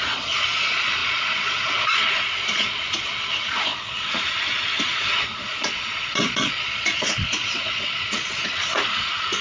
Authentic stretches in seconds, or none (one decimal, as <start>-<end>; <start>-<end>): none